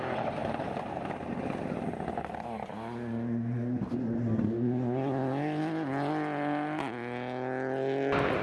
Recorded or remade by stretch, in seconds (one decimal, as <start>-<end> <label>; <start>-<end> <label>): 0.0-0.4 recorded; 0.4-1.4 remade; 1.4-8.4 recorded